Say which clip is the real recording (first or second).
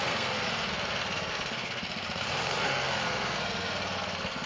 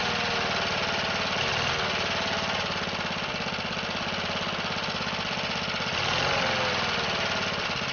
second